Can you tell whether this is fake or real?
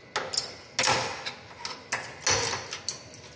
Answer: real